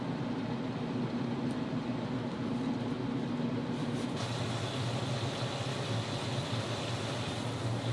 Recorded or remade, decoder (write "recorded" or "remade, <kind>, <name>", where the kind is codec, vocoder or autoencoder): recorded